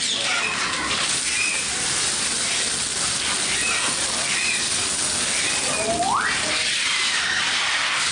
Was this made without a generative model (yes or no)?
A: yes